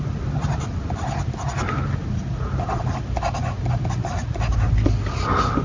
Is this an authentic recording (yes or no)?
yes